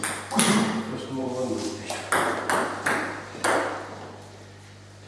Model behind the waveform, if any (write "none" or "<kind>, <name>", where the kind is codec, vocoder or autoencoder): none